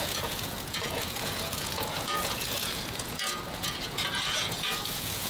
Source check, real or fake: fake